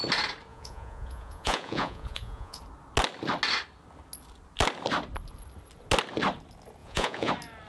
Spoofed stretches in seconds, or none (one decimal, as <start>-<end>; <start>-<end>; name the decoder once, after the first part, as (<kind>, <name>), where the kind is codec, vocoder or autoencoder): 0.5-2.6 (vocoder, Vocos); 6.8-7.3